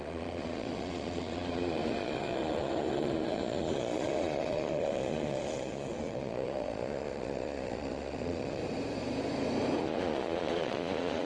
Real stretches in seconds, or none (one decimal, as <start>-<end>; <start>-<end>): 8.6-9.8